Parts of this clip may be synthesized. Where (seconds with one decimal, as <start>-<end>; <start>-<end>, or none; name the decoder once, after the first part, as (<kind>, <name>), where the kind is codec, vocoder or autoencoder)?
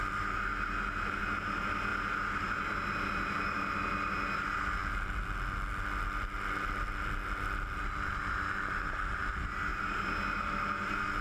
none